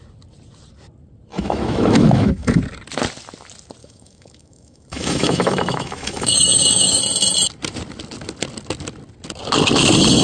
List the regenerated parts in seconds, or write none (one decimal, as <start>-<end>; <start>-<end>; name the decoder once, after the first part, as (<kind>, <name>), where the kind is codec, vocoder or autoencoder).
1.3-2.6 (autoencoder, DAC-VAE); 3.8-7.0